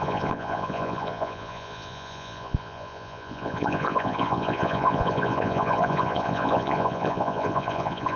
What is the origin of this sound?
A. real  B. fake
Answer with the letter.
B